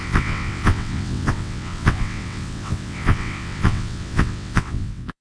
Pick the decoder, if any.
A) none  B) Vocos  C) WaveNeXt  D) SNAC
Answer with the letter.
C